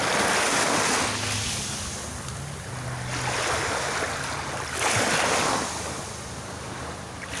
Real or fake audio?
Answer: real